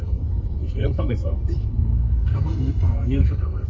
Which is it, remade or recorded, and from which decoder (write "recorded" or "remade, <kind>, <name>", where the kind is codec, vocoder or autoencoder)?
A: remade, codec, SNAC